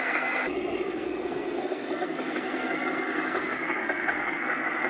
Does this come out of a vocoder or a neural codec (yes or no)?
yes